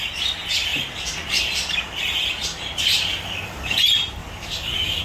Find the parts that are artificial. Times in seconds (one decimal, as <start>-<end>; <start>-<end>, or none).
3.1-3.8; 4.2-5.0